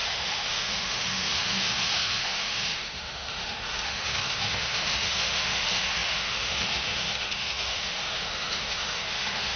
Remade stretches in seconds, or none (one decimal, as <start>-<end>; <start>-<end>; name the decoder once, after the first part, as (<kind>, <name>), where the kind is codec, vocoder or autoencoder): 0.0-9.6 (autoencoder, DAC-VAE)

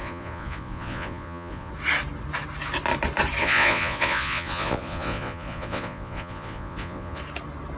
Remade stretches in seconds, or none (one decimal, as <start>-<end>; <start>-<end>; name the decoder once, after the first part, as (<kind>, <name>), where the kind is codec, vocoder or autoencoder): 0.0-1.7 (vocoder, Vocos); 3.4-7.2